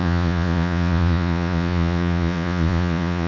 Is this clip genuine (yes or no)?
no